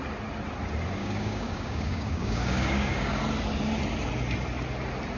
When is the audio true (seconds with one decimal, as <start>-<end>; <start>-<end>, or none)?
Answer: 0.0-1.0; 3.2-5.2